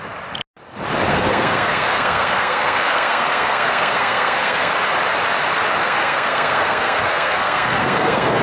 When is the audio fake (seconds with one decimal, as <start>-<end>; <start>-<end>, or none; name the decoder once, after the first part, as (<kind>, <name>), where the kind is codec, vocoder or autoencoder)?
1.1-4.7 (codec, SNAC); 5.8-8.4